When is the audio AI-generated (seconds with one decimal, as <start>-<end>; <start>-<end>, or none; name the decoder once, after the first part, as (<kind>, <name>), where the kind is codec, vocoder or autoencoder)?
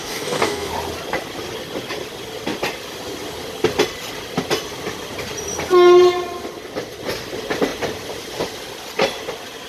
0.0-0.7 (codec, DAC)